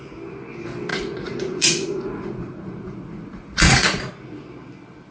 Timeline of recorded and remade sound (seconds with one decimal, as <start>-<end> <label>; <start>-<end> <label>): 0.0-0.9 recorded; 0.9-4.0 remade; 4.0-5.1 recorded